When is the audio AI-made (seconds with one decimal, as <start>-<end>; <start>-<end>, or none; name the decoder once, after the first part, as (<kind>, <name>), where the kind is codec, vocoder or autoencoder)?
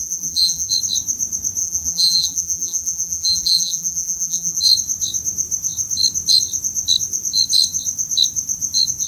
0.0-0.7 (vocoder, BigVGAN v2); 1.6-4.6